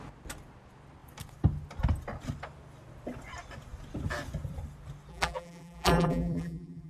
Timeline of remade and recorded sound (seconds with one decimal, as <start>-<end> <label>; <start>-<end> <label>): 0.0-5.1 recorded; 5.1-6.9 remade